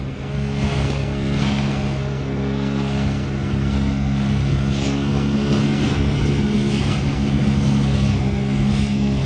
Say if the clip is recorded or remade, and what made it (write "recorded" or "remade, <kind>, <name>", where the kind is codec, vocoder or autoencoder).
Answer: remade, codec, SNAC